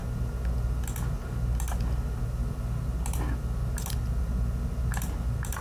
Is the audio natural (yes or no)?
yes